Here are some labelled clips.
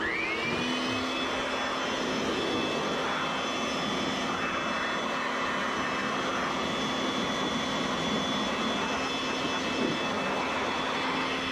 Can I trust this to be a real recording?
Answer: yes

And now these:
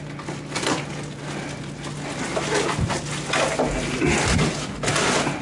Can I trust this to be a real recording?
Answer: yes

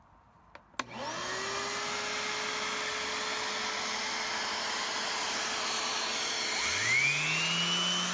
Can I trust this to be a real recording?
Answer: yes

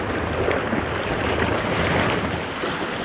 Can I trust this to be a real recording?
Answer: yes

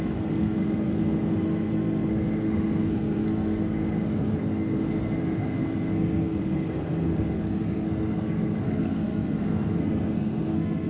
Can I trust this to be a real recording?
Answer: no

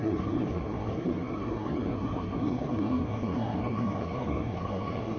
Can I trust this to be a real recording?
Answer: no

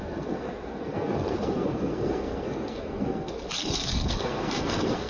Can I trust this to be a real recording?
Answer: no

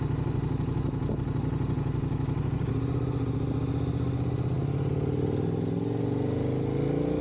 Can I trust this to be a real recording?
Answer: yes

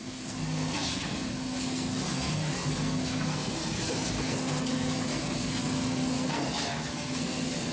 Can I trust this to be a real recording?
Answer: no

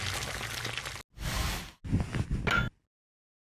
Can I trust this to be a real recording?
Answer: yes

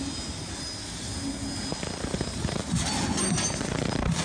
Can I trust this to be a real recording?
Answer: yes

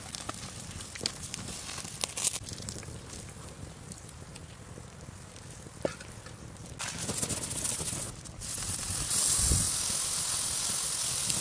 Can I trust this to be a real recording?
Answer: yes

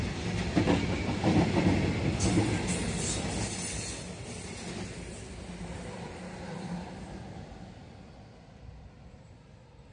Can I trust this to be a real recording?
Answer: yes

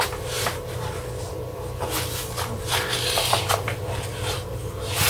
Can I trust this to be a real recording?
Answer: yes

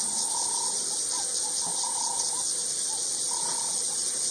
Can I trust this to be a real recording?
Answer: yes